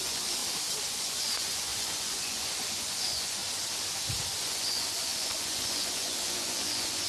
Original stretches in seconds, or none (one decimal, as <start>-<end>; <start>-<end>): 0.4-0.9; 3.4-4.4